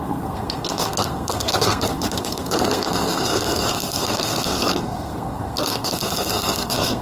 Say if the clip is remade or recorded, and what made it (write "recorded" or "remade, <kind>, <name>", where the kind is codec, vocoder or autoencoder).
remade, codec, SNAC